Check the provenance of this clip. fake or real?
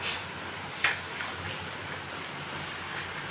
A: real